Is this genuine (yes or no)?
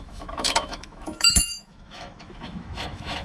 no